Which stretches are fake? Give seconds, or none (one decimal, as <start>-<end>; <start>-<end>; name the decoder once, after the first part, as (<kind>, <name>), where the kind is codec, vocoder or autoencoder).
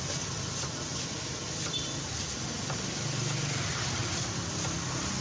none